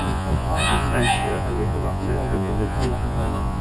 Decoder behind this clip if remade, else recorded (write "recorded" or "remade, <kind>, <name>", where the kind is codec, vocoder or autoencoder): remade, vocoder, Vocos